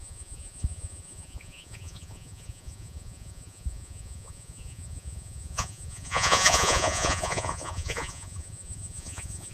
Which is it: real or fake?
fake